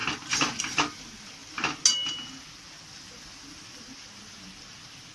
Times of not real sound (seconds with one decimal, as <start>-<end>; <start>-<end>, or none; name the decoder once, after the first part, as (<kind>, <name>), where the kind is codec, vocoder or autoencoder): none